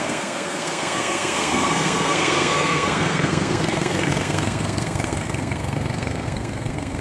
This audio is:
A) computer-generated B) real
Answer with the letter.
A